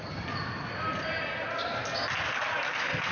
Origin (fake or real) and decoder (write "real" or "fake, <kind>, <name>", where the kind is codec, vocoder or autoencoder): real